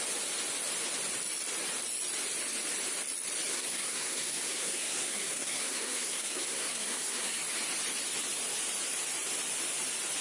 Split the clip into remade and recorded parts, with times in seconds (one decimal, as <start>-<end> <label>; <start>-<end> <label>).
0.0-3.5 recorded; 3.5-7.4 remade; 7.4-10.2 recorded